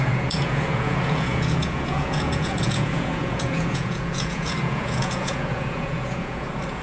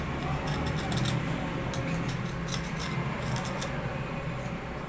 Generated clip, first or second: first